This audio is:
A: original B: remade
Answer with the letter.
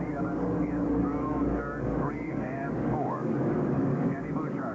B